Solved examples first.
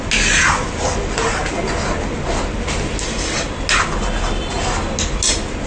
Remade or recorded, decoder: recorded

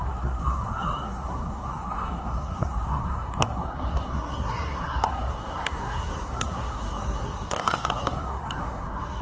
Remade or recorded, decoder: remade, codec, SNAC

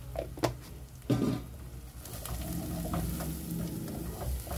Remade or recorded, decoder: recorded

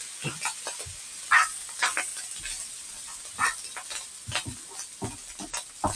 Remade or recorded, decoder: recorded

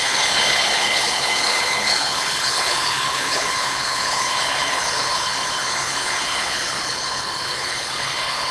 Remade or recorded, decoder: remade, codec, HILCodec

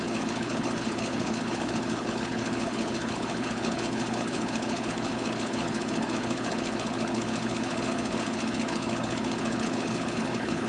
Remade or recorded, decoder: remade, codec, HILCodec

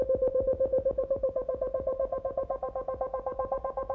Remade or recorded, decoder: remade, vocoder, Vocos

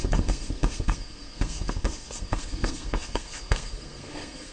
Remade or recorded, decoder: remade, codec, SNAC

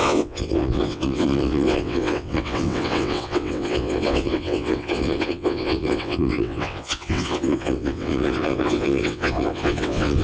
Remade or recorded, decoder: remade, vocoder, WaveNeXt